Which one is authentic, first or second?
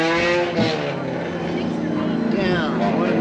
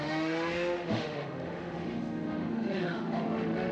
first